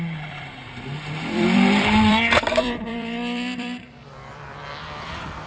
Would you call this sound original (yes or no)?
no